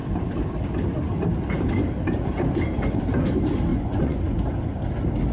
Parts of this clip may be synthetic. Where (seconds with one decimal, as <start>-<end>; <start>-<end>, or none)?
3.7-4.2